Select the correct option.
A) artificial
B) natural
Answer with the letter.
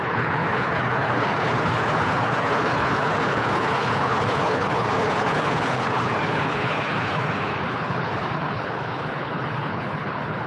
A